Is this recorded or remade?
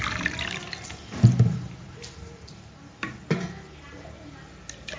recorded